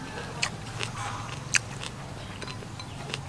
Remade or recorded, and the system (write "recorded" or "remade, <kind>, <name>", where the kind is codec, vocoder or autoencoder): recorded